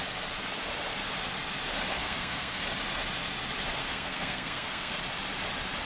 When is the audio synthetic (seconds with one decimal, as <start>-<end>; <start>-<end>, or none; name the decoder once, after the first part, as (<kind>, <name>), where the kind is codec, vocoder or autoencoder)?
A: 2.0-2.6 (codec, SNAC); 3.8-5.0